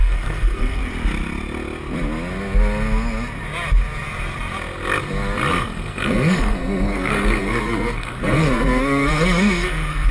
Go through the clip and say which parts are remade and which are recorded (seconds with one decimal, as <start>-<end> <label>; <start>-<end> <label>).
0.0-0.8 remade; 0.8-5.5 recorded; 5.5-10.1 remade